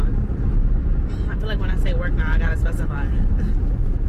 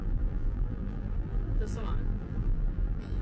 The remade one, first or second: second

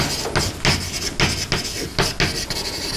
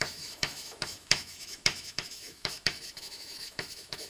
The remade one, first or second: second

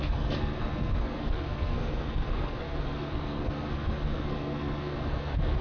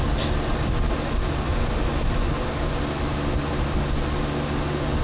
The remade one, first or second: first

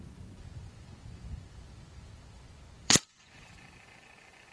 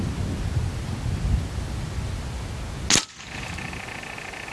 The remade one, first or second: first